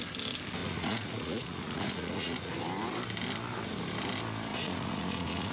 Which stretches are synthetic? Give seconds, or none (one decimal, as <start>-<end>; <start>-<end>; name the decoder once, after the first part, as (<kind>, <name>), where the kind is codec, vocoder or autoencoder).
0.6-2.5 (vocoder, Vocos); 4.5-5.5